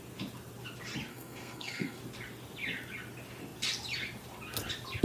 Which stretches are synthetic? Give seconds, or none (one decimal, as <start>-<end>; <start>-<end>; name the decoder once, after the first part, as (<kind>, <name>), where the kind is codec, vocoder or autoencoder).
1.1-2.0 (codec, SNAC)